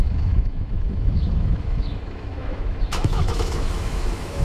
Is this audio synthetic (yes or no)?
yes